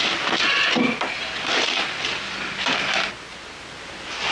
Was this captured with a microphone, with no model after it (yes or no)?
yes